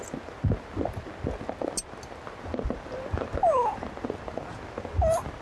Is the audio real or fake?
real